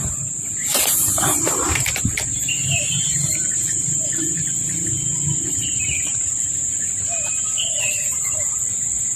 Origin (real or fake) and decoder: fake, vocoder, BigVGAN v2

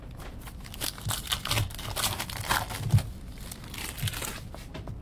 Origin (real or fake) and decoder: real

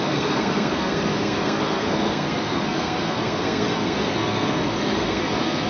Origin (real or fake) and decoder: fake, codec, SNAC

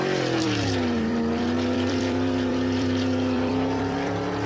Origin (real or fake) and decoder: fake, vocoder, BigVGAN v2